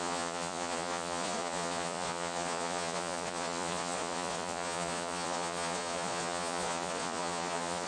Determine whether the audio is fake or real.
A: fake